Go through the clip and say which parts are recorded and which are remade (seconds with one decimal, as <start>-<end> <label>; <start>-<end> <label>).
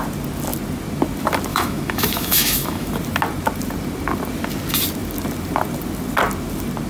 0.0-1.5 recorded; 1.5-2.9 remade; 2.9-6.9 recorded